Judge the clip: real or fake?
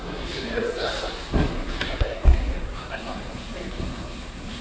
fake